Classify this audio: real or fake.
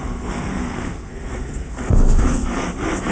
fake